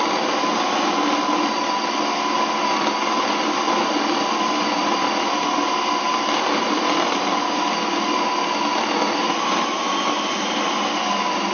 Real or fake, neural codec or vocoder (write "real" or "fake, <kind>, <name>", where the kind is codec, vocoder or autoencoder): real